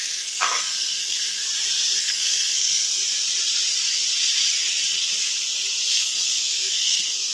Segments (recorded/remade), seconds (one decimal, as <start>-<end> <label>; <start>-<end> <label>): 0.0-1.4 remade; 1.4-2.0 recorded; 2.0-2.9 remade; 2.9-5.9 recorded; 5.9-7.3 remade